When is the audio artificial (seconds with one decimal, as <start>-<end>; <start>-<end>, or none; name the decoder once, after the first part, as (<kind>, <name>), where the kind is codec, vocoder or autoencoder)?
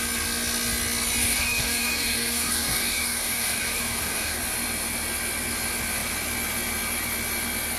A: 1.2-4.4 (codec, DAC)